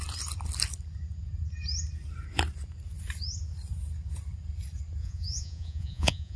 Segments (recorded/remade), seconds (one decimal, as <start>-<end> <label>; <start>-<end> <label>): 0.0-5.0 recorded; 5.0-6.4 remade